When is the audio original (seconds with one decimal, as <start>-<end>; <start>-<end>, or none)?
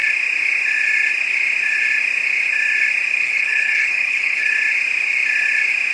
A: 0.0-3.1; 4.5-5.9